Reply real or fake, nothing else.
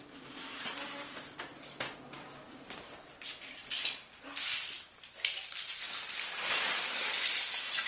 real